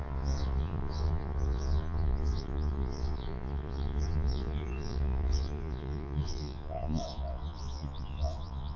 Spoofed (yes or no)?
yes